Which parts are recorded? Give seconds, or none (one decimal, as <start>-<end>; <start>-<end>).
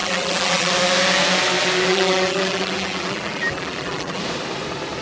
0.7-1.9; 4.2-5.0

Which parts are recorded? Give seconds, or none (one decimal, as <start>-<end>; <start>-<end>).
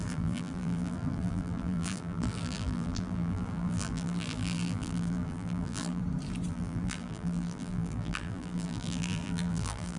6.0-6.5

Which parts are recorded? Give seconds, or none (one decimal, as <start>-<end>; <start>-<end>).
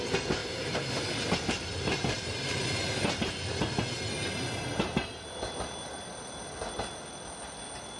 0.0-0.4; 3.3-8.0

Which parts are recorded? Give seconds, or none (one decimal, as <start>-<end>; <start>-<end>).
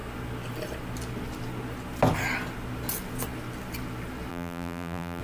0.0-4.3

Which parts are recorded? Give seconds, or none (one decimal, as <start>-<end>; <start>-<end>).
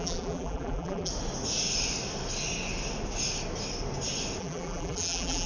1.1-4.4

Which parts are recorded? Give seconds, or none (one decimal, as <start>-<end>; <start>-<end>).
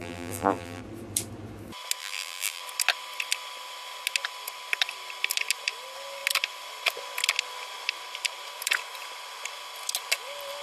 0.8-2.0; 2.6-10.6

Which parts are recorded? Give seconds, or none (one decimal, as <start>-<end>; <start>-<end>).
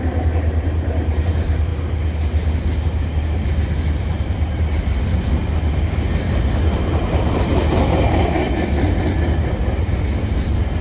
1.7-6.6; 7.5-10.3